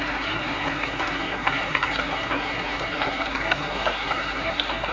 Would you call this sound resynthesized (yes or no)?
yes